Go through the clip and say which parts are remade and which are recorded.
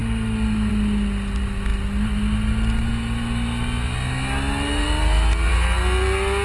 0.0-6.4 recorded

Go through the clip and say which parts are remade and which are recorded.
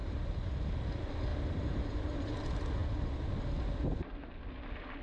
0.0-0.5 remade; 0.5-1.3 recorded; 1.3-2.3 remade; 2.3-5.0 recorded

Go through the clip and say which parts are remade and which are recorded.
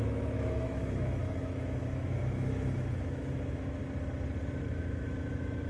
0.0-3.8 remade; 3.8-4.7 recorded; 4.7-5.7 remade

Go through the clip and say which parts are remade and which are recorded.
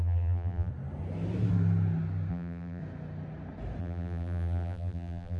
0.0-0.7 remade; 0.7-2.3 recorded; 2.3-2.8 remade; 2.8-3.8 recorded; 3.8-5.4 remade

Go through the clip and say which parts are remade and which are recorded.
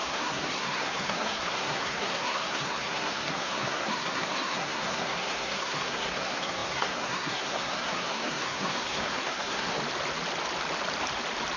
0.0-9.8 remade; 9.8-11.6 recorded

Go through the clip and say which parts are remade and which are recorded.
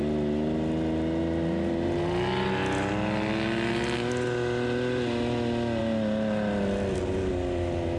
0.0-8.0 recorded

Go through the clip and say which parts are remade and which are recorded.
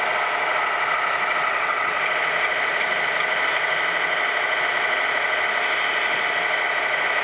0.0-1.5 recorded; 1.5-2.0 remade; 2.0-7.2 recorded